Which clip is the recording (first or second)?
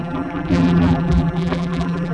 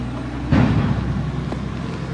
second